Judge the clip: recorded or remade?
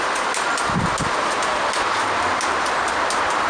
recorded